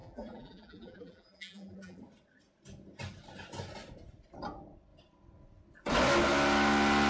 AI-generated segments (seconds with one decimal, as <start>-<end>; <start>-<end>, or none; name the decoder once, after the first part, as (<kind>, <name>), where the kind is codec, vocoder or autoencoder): 0.0-2.0 (vocoder, BigVGAN v2)